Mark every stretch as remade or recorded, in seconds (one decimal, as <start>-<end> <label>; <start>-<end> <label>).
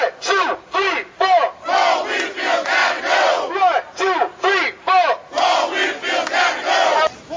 0.0-2.8 recorded; 2.8-3.5 remade; 3.5-7.4 recorded